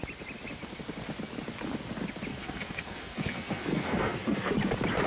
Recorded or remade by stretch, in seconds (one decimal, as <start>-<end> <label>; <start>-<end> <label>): 0.0-2.3 recorded; 2.3-4.5 remade; 4.5-5.1 recorded